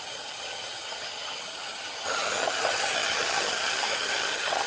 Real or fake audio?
fake